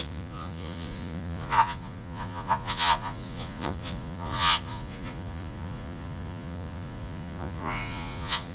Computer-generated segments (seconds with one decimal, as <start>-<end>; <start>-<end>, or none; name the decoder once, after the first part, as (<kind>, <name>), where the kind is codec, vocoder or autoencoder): 0.0-8.5 (vocoder, Vocos)